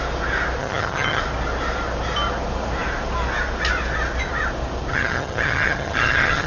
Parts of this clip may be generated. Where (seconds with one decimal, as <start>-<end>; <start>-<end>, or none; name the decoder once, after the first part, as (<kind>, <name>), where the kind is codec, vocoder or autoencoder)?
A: 0.6-1.2 (vocoder, HiFi-GAN); 4.9-6.5